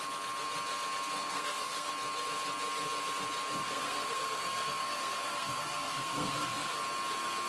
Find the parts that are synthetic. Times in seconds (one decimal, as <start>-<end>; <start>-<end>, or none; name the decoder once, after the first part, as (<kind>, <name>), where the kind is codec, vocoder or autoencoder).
1.2-1.9 (codec, SNAC); 3.6-6.8